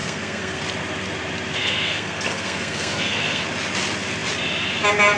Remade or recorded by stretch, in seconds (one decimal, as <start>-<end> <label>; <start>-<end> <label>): 0.0-0.6 remade; 0.6-1.6 recorded; 1.6-3.4 remade; 3.4-5.2 recorded